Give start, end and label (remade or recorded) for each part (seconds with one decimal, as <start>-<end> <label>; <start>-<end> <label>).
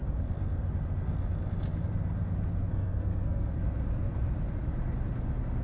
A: 0.0-2.7 recorded; 2.7-3.5 remade; 3.5-5.6 recorded